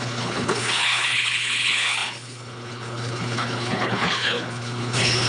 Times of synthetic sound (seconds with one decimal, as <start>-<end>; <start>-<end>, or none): 0.0-5.3